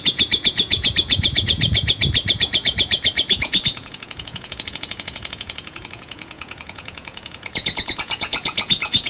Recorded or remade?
remade